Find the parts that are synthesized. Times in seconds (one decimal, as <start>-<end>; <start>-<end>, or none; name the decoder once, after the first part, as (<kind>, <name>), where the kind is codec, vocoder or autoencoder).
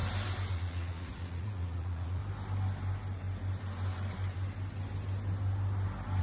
0.5-2.2 (vocoder, Vocos)